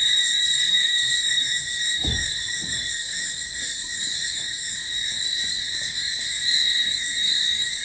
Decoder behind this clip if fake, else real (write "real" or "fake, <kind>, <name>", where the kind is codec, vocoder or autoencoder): fake, codec, DAC